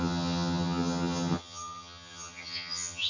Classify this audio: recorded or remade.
remade